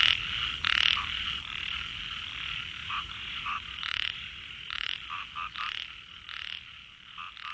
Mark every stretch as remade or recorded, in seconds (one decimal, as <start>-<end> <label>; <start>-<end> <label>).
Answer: 0.0-2.8 recorded; 2.8-4.9 remade; 4.9-7.5 recorded